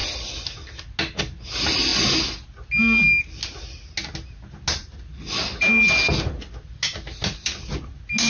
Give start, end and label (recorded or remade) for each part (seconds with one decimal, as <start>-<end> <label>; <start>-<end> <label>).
0.0-8.3 recorded